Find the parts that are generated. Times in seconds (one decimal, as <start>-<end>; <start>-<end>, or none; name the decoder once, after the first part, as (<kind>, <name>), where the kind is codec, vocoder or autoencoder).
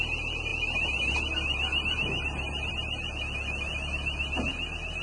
none